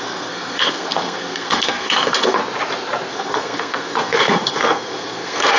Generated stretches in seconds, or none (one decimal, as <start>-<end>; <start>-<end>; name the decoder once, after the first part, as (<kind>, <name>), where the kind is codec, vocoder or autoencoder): 0.0-2.4 (codec, SNAC); 3.1-5.6

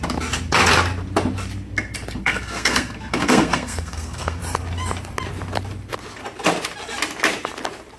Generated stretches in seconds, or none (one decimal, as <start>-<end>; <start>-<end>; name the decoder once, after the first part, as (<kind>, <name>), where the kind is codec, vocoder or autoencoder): 2.2-4.4 (codec, SNAC)

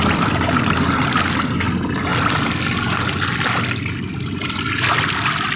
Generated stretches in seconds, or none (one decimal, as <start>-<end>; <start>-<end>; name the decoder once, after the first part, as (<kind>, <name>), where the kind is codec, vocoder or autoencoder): none

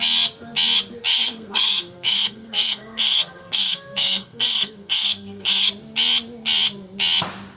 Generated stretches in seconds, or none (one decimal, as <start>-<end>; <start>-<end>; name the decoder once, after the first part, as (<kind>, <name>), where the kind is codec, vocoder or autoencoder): 1.1-5.7 (codec, SNAC)

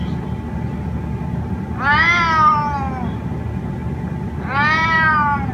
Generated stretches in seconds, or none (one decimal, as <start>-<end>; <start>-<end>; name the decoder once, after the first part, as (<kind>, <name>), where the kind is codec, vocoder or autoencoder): none

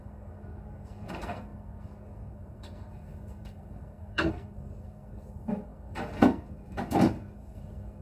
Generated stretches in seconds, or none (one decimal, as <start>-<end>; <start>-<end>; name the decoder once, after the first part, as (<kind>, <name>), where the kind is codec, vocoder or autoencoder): 0.0-8.0 (codec, SNAC)

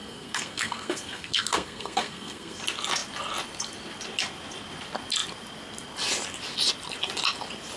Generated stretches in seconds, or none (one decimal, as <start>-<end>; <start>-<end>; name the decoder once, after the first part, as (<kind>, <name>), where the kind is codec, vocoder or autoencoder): 0.0-2.6 (codec, SNAC)